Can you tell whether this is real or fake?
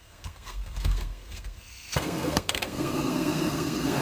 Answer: fake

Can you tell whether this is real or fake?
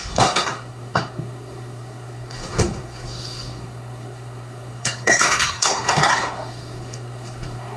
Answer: fake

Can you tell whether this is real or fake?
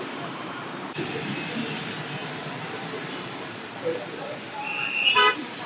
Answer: fake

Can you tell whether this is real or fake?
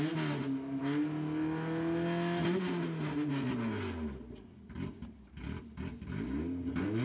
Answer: real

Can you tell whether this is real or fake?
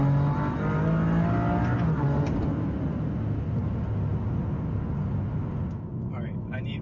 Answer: real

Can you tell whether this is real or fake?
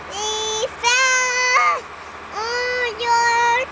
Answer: real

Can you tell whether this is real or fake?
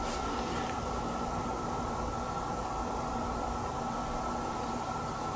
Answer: real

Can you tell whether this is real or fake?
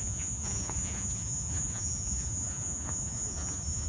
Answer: fake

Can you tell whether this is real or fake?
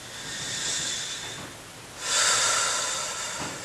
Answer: real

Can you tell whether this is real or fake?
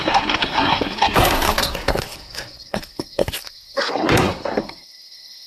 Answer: fake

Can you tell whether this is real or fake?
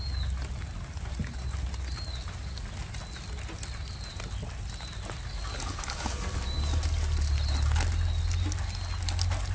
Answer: real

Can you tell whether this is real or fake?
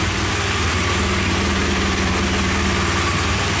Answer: real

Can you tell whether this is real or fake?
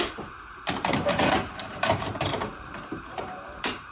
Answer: fake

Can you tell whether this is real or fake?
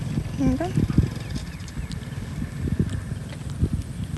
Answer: real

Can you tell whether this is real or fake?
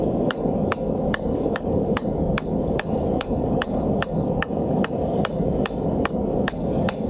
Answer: fake